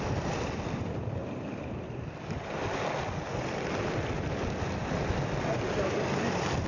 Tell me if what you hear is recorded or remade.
recorded